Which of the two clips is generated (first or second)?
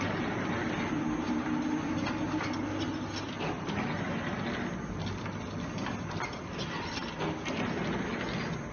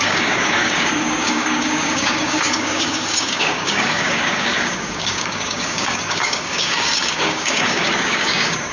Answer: second